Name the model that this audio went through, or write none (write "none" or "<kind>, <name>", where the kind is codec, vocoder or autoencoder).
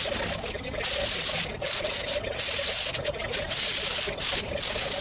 none